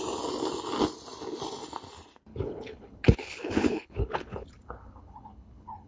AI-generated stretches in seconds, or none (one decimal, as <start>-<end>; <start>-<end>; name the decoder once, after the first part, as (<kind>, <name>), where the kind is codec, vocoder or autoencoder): 2.3-5.9 (codec, HILCodec)